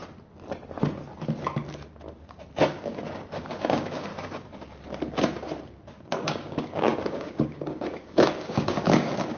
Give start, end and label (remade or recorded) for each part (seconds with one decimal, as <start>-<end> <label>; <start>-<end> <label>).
0.0-2.8 recorded; 2.8-4.1 remade; 4.1-6.0 recorded; 6.0-9.4 remade